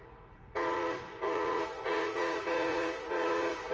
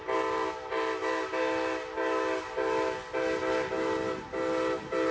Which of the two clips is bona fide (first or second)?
second